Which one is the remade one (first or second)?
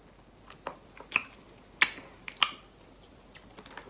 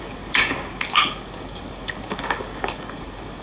second